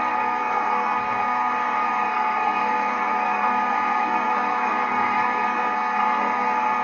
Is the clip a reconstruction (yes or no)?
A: yes